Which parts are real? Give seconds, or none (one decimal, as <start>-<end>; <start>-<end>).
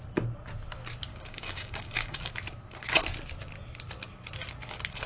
0.0-1.1; 2.3-5.1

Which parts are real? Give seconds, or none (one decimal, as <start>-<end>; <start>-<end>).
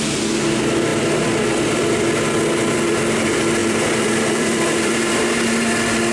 0.0-0.9; 2.1-3.6; 5.2-6.1